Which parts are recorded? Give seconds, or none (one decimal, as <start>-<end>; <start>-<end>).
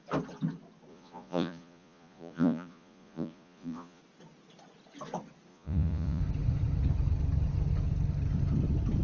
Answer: 0.0-0.9; 4.0-5.5; 6.2-9.0